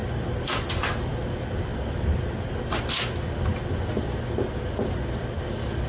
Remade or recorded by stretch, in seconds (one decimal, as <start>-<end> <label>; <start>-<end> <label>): 0.0-5.9 recorded